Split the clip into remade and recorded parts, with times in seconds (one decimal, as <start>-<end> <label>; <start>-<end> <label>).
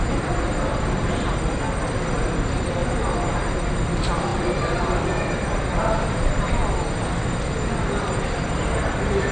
0.0-2.8 remade; 2.8-3.7 recorded; 3.7-6.6 remade; 6.6-8.0 recorded; 8.0-9.3 remade